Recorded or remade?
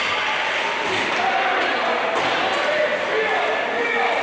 recorded